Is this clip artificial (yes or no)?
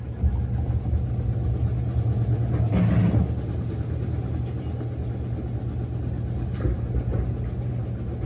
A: no